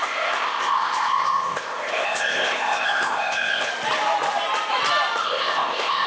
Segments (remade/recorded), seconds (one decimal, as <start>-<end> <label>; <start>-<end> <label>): 0.0-3.7 remade; 3.7-5.2 recorded; 5.2-6.1 remade